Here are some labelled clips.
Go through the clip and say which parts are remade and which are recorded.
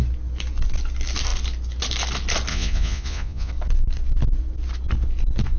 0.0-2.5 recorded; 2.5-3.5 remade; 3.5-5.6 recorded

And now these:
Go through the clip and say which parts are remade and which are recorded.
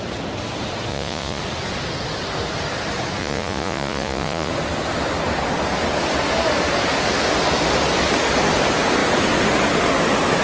0.0-0.9 recorded; 0.9-1.4 remade; 1.4-3.2 recorded; 3.2-4.5 remade; 4.5-10.4 recorded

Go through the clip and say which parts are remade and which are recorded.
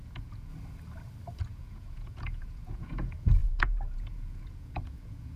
0.0-0.5 remade; 0.5-1.4 recorded; 1.4-5.4 remade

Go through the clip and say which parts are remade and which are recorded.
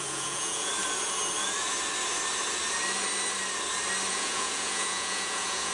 0.0-0.7 remade; 0.7-4.1 recorded; 4.1-5.7 remade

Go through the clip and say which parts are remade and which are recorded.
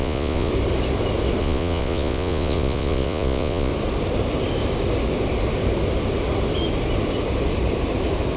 0.0-0.5 remade; 0.5-1.4 recorded; 1.4-3.7 remade; 3.7-8.4 recorded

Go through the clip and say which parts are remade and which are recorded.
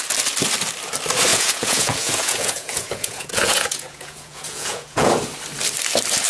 0.0-1.3 recorded; 1.3-5.1 remade; 5.1-6.3 recorded